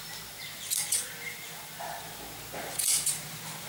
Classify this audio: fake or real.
real